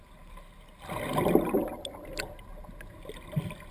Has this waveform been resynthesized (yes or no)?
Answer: no